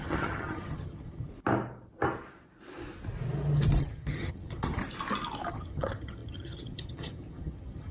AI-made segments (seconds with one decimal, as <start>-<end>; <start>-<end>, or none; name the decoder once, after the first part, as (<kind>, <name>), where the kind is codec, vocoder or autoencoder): 0.0-1.3 (vocoder, HiFi-GAN); 3.8-4.8; 5.5-7.9